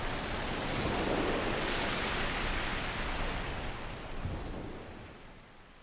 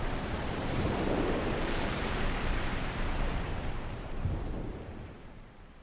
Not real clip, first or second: second